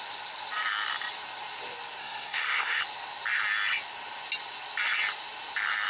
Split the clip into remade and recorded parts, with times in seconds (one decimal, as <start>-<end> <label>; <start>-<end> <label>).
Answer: 0.0-2.0 recorded; 2.0-2.8 remade; 2.8-5.9 recorded